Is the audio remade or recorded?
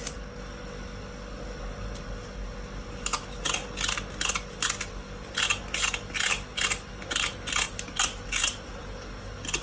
recorded